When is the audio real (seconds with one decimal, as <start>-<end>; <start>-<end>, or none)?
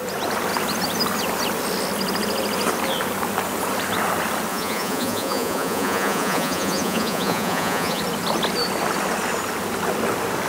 0.0-4.5; 8.0-10.5